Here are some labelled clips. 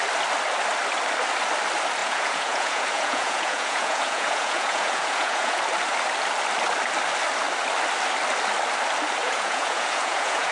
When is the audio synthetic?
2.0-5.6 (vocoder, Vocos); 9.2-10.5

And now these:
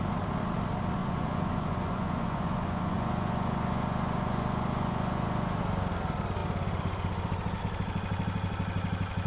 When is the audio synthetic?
1.0-5.6 (vocoder, Vocos)

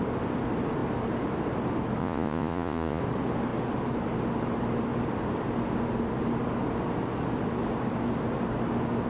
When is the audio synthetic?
2.0-3.0 (vocoder, Vocos)

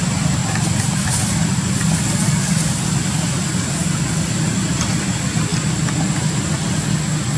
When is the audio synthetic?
none

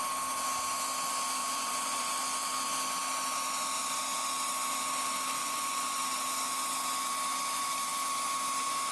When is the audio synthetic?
1.4-2.1 (vocoder, Vocos); 5.4-6.0

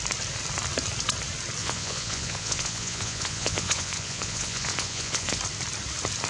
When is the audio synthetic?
1.6-5.4 (vocoder, Vocos)

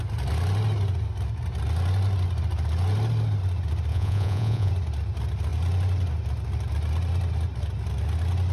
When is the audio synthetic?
3.9-4.7 (vocoder, Vocos)